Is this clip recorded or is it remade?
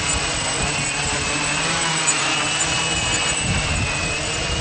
remade